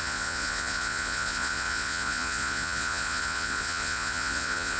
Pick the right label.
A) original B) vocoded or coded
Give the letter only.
B